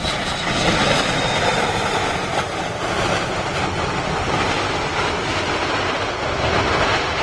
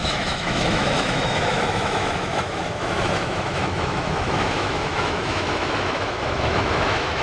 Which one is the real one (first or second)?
first